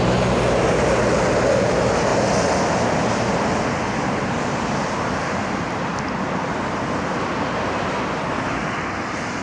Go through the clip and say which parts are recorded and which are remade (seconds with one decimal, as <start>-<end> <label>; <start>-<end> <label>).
0.0-9.4 recorded